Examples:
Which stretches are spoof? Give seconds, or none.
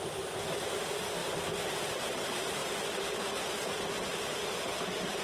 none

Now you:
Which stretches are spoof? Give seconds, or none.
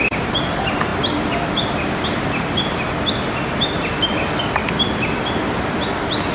none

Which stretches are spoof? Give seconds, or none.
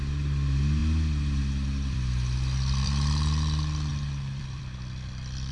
0.8-2.9 (vocoder, BigVGAN v2); 3.9-4.6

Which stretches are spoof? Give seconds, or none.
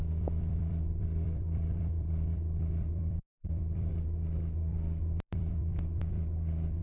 0.0-3.9 (vocoder, BigVGAN v2); 4.7-6.8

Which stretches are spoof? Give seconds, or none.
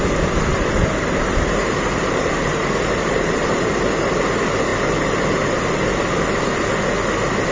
0.5-3.7 (vocoder, BigVGAN v2)